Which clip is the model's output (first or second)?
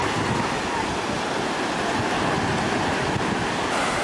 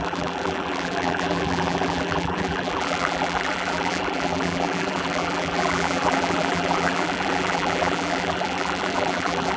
second